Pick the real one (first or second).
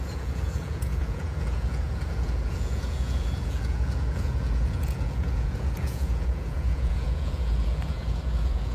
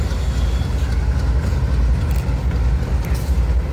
second